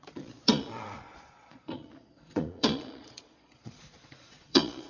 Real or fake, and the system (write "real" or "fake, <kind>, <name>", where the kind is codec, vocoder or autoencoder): fake, vocoder, Vocos